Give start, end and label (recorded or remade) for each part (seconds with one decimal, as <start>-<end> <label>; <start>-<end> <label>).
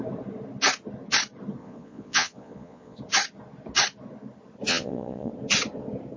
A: 0.0-1.6 recorded; 1.6-3.0 remade; 3.0-4.7 recorded; 4.7-5.3 remade; 5.3-6.2 recorded